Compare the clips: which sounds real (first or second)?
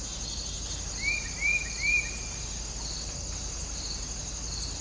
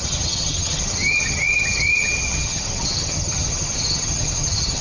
first